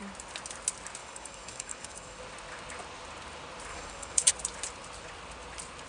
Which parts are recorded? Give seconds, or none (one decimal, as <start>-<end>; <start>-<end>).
0.0-1.0; 2.2-3.7; 4.3-5.9